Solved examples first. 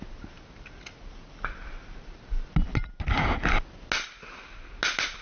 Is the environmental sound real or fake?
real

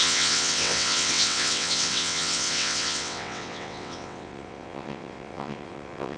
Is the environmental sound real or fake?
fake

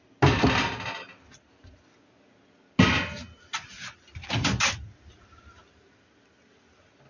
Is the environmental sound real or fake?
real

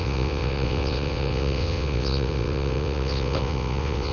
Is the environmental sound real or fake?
fake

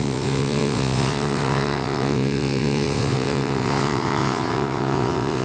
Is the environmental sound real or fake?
fake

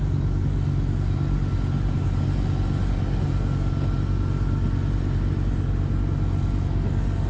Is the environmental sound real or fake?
real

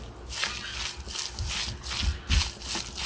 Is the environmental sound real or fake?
real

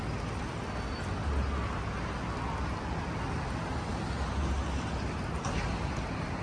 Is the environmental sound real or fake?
real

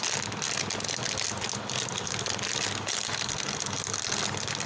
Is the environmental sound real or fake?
real